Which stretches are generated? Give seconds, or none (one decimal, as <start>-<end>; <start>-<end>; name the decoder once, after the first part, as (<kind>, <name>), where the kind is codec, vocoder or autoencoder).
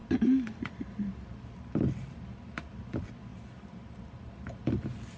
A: 3.3-4.3 (vocoder, BigVGAN v2)